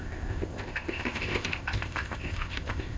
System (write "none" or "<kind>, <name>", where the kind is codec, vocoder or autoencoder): codec, ZipCodec